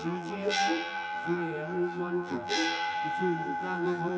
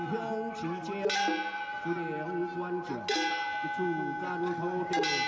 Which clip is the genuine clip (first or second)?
second